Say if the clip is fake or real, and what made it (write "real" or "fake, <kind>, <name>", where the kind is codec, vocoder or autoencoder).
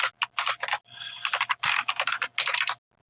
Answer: real